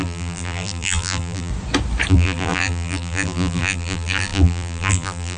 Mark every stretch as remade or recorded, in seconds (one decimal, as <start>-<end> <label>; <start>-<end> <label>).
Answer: 0.0-1.5 remade; 1.5-2.1 recorded; 2.1-5.4 remade